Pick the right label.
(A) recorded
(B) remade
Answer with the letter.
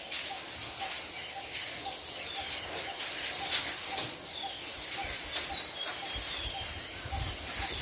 A